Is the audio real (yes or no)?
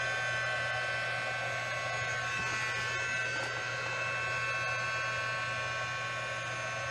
yes